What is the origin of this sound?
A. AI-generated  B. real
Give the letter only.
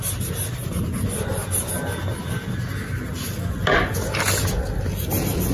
B